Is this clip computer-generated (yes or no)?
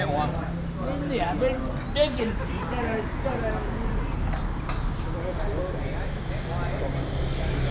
no